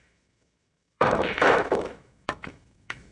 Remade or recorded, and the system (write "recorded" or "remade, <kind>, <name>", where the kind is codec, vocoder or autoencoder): remade, autoencoder, DAC-VAE